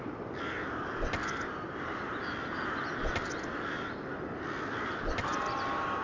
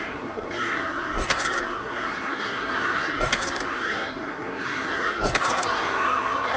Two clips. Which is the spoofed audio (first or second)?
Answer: second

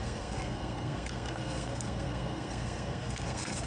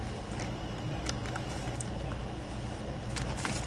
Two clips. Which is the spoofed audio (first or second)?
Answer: first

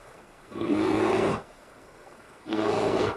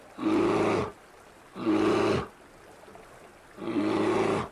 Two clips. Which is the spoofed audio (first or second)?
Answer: first